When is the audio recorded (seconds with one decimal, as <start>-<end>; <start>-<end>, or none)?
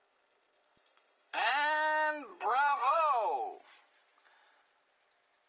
1.5-2.3; 3.0-5.5